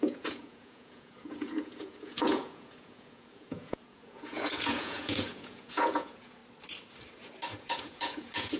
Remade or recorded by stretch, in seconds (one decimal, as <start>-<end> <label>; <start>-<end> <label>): 0.0-6.4 remade; 6.4-7.5 recorded; 7.5-8.6 remade